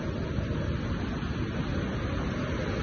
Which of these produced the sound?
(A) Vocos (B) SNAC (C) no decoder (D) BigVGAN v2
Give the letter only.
C